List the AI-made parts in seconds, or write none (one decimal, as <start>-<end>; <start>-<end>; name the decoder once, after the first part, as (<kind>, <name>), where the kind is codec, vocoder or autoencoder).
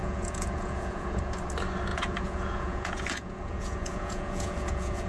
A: 0.0-1.2 (vocoder, Vocos); 1.9-5.1